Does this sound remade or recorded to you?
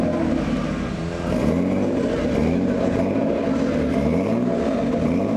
recorded